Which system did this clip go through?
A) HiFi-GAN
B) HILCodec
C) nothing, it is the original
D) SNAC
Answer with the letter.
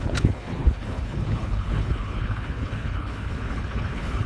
B